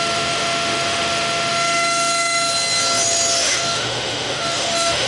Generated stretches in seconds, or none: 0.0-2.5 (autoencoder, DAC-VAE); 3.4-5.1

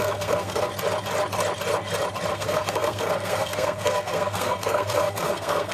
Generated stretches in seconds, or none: 0.0-0.7 (codec, SNAC); 2.3-5.7

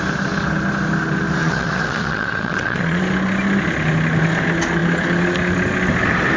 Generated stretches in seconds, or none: 1.4-3.0 (vocoder, Vocos)

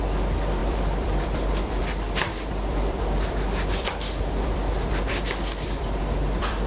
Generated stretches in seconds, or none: 0.6-1.8 (vocoder, BigVGAN v2); 2.5-6.7

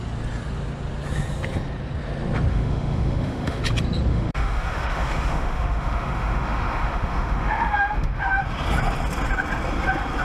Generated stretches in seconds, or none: 2.5-3.6 (autoencoder, DAC-VAE); 4.1-8.4